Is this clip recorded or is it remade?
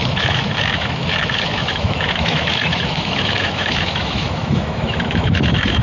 remade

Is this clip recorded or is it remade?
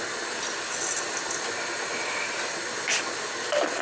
recorded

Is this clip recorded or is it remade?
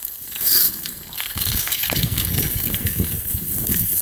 remade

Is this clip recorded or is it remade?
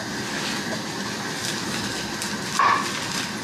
recorded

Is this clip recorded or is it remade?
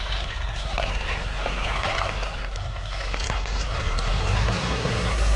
remade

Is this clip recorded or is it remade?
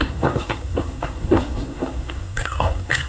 remade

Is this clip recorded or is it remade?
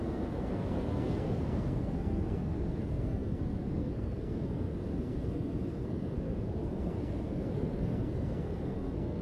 remade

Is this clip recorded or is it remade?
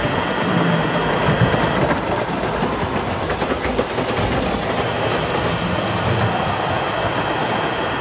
remade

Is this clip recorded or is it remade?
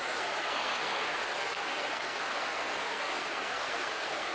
remade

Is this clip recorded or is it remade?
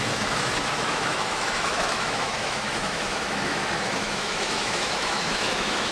remade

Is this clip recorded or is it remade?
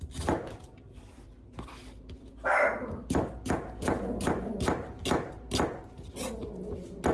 recorded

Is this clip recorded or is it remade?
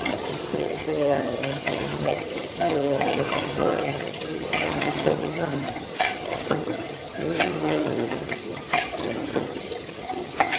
remade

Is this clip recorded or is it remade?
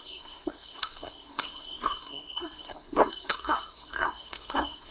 remade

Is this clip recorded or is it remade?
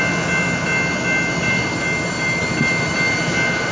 recorded